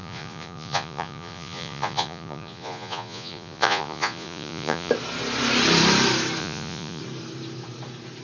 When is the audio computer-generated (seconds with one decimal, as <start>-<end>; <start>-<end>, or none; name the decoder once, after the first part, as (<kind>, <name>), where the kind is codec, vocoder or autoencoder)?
0.0-4.9 (vocoder, Vocos); 6.4-7.0